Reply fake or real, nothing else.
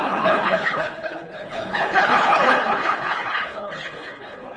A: fake